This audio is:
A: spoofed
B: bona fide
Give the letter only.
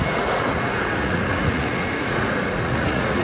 A